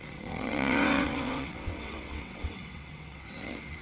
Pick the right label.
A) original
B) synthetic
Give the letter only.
B